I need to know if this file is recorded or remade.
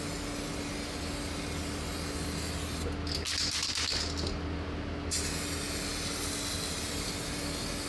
recorded